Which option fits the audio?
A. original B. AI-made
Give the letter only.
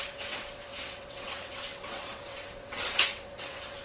B